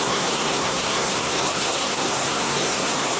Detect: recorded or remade remade